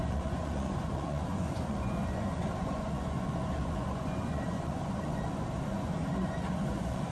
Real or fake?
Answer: fake